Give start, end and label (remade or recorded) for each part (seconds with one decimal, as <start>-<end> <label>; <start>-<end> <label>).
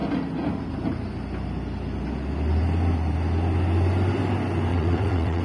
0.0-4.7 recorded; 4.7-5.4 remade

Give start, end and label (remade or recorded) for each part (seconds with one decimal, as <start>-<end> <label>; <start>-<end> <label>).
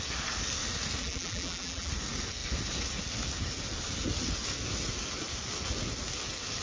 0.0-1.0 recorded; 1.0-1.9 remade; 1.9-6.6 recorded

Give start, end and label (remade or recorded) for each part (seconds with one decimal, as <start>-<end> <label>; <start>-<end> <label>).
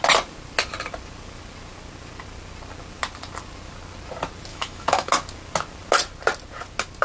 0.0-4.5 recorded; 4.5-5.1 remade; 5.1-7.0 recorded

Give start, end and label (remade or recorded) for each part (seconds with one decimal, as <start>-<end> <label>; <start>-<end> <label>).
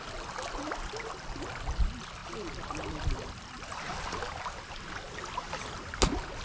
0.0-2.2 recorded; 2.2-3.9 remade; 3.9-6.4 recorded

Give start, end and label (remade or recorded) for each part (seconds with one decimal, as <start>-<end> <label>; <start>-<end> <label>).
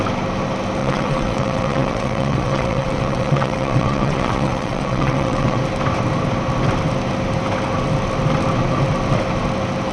0.0-0.8 recorded; 0.8-5.6 remade; 5.6-9.9 recorded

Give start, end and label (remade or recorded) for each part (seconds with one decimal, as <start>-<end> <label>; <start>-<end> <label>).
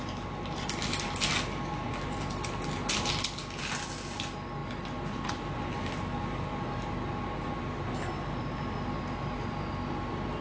0.0-10.4 recorded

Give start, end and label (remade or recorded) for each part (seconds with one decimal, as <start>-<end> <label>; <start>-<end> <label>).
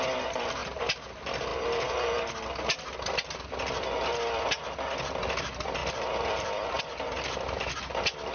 0.0-0.6 recorded; 0.6-1.1 remade; 1.1-5.8 recorded; 5.8-6.8 remade; 6.8-8.3 recorded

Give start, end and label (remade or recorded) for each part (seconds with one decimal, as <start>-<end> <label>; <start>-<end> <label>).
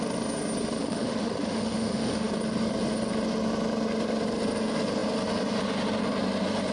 0.0-0.8 recorded; 0.8-2.3 remade; 2.3-6.7 recorded